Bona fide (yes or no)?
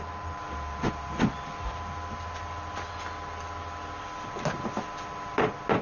yes